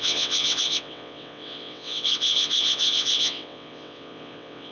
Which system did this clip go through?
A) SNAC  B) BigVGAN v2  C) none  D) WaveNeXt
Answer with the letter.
D